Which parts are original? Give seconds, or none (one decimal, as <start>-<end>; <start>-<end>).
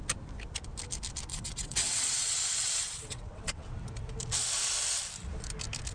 0.0-1.3; 3.7-5.9